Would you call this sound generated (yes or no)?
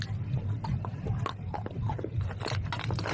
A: no